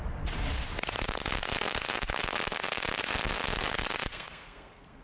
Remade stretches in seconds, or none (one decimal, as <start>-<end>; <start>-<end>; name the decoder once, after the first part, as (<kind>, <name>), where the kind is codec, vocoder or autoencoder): 4.1-5.0 (codec, SNAC)